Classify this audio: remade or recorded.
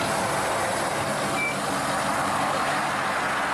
recorded